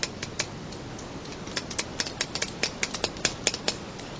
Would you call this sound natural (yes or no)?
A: yes